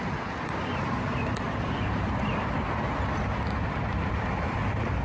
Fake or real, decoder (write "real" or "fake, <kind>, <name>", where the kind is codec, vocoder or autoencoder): real